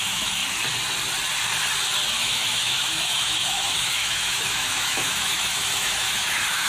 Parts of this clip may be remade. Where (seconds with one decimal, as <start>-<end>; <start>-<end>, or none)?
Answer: 0.0-0.4; 2.1-6.7